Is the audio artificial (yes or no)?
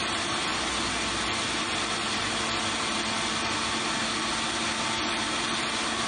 no